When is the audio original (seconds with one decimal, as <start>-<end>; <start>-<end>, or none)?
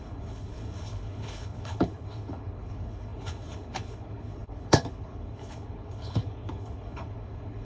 none